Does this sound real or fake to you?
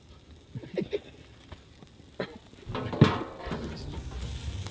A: real